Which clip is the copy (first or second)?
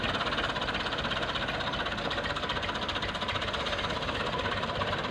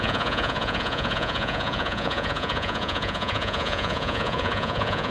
second